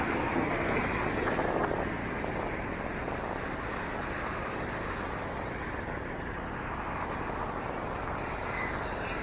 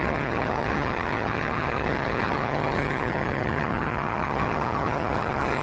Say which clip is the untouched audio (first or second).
first